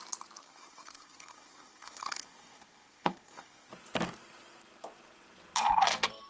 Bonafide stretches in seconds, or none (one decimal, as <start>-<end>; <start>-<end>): 0.0-0.4; 3.7-6.3